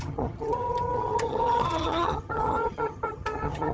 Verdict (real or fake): fake